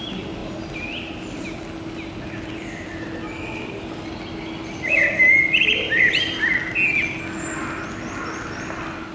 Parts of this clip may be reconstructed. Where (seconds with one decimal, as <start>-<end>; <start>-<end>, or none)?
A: none